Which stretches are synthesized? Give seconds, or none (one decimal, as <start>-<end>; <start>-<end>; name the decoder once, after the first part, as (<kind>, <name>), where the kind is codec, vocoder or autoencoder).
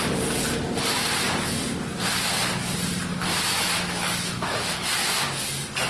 3.1-4.9 (autoencoder, DAC-VAE)